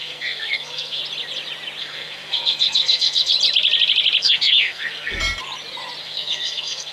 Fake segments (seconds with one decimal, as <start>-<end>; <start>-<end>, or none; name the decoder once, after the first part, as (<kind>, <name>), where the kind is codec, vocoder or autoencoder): 0.0-1.0 (codec, SNAC); 1.8-3.3; 4.2-5.2; 6.0-6.9